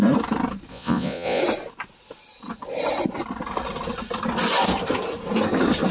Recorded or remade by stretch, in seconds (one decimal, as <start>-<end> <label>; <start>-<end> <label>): 0.0-0.7 recorded; 0.7-1.4 remade; 1.4-5.9 recorded